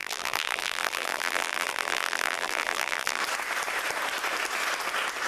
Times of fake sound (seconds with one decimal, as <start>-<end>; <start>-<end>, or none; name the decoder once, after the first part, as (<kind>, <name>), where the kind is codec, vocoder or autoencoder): 0.0-3.2 (vocoder, BigVGAN v2)